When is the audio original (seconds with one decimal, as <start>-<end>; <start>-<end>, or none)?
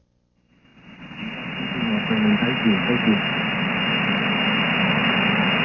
0.0-5.6